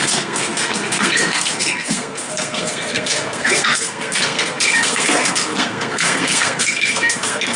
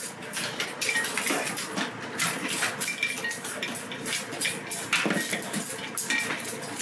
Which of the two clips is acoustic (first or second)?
second